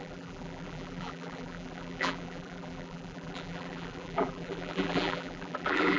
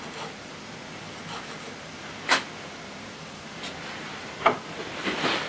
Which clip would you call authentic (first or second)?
second